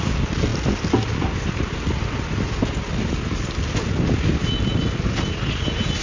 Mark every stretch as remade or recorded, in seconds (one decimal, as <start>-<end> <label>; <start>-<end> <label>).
0.0-6.0 recorded